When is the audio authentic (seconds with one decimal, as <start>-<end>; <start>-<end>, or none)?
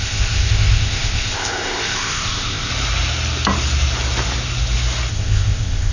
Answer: 2.7-5.1